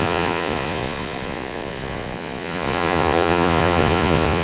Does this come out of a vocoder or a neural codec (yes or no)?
yes